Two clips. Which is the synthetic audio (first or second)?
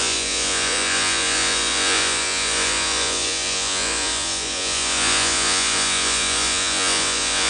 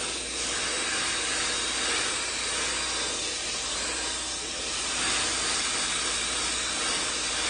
first